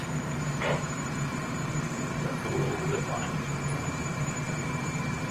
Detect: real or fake fake